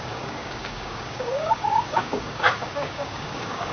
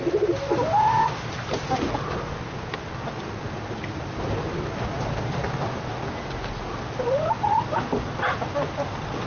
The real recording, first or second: second